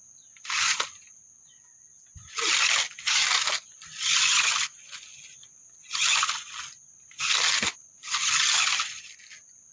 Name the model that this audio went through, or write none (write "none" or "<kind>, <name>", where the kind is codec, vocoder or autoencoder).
none